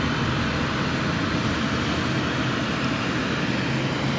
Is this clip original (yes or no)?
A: yes